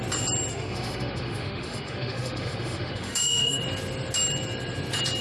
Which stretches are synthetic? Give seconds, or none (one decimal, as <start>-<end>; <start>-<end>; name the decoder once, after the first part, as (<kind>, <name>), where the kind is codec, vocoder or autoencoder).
0.5-3.6 (autoencoder, DAC-VAE)